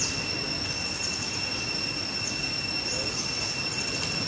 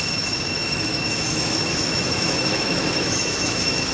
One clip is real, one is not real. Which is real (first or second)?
first